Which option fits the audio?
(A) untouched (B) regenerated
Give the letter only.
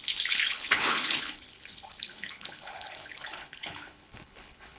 B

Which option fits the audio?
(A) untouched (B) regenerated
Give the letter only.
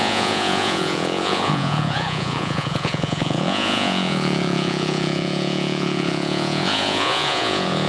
B